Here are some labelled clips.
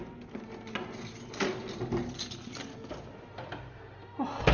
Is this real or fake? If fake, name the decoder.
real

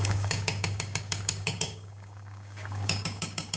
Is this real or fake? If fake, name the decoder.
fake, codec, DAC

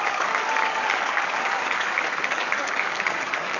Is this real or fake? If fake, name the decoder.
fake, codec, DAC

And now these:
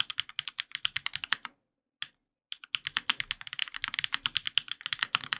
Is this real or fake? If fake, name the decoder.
real